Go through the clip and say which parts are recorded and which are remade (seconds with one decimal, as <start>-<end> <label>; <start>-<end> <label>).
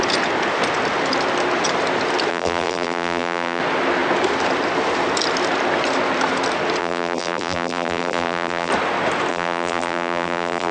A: 0.0-2.3 recorded; 2.3-3.6 remade; 3.6-6.8 recorded; 6.8-8.7 remade; 8.7-9.3 recorded; 9.3-10.7 remade